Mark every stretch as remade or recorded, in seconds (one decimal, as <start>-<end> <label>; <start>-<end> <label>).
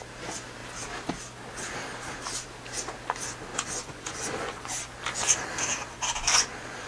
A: 0.0-3.5 recorded; 3.5-4.7 remade; 4.7-6.3 recorded; 6.3-6.9 remade